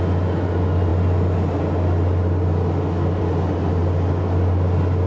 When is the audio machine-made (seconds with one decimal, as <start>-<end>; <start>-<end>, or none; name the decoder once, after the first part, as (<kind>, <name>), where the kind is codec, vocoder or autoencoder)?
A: none